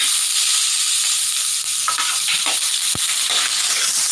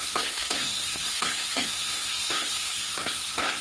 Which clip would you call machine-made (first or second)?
second